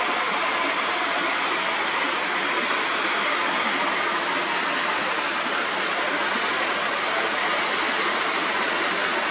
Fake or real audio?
real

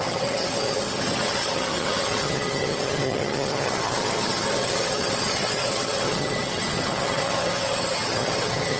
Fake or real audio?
fake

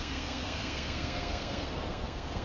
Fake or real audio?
fake